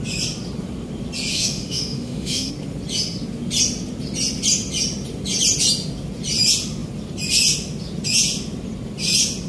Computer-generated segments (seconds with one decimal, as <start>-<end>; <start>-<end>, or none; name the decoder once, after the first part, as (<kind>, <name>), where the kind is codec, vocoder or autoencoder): 1.3-2.5 (autoencoder, DAC-VAE)